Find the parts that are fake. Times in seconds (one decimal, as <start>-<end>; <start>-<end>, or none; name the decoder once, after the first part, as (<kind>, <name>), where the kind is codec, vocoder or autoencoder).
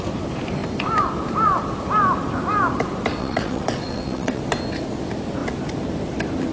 3.2-4.4 (vocoder, WaveNeXt)